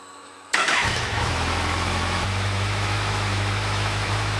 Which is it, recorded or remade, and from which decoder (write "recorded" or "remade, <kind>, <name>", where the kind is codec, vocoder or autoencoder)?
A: remade, autoencoder, DAC-VAE